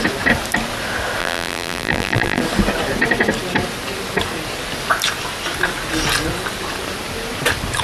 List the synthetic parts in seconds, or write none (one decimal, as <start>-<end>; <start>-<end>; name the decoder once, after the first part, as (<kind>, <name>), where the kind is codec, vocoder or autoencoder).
1.2-2.4 (vocoder, BigVGAN v2)